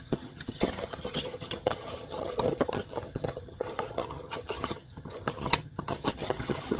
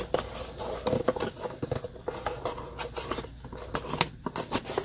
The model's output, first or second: first